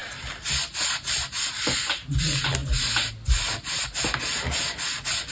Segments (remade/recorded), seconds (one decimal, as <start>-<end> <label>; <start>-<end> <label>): 0.0-5.3 recorded

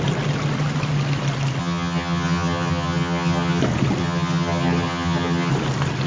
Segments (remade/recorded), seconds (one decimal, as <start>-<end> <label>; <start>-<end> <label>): 0.0-1.6 recorded; 1.6-3.6 remade; 3.6-4.0 recorded; 4.0-5.5 remade; 5.5-6.1 recorded

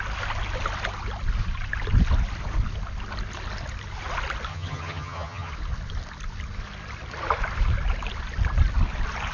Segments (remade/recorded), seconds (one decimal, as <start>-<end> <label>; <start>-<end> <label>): 0.0-4.5 recorded; 4.5-5.5 remade; 5.5-9.3 recorded

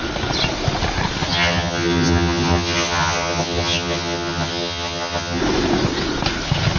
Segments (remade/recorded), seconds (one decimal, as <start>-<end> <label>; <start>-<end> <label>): 0.0-1.3 recorded; 1.3-5.4 remade; 5.4-6.8 recorded

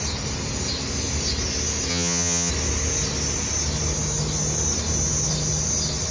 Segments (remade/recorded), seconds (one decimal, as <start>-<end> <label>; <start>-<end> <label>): 0.0-1.9 recorded; 1.9-2.5 remade; 2.5-6.1 recorded

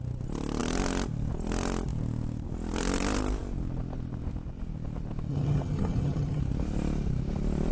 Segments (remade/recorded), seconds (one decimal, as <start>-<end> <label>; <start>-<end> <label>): 0.0-5.3 recorded; 5.3-6.4 remade; 6.4-7.7 recorded

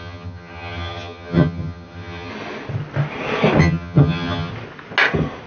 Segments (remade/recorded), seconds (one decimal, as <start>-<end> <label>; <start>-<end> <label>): 0.0-2.3 remade; 2.3-3.6 recorded; 3.6-4.5 remade; 4.5-5.5 recorded